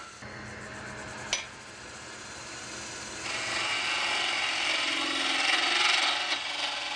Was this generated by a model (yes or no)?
no